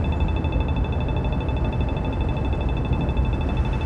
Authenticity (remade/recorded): recorded